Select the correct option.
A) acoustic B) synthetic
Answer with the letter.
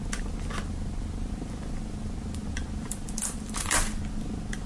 A